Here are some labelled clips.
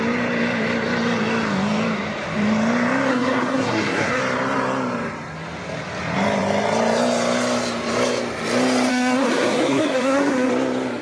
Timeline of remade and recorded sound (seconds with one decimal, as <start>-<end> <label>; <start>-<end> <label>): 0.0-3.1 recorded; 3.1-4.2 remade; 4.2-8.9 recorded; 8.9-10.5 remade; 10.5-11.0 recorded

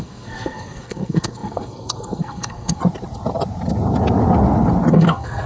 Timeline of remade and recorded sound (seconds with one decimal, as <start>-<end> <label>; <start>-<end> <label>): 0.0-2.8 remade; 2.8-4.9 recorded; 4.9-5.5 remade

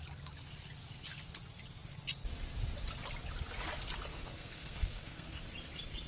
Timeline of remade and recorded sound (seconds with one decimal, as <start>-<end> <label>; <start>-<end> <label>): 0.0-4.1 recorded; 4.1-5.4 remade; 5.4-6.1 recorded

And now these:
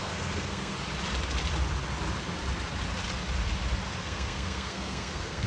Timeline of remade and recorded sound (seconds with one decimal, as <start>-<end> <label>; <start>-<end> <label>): 0.0-0.7 remade; 0.7-4.0 recorded; 4.0-5.5 remade

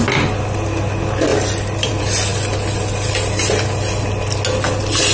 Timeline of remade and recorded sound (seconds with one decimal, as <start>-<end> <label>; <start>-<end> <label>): 0.0-5.1 recorded